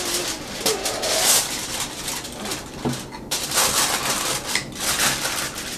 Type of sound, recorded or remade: recorded